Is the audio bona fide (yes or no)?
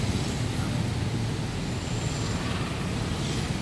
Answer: yes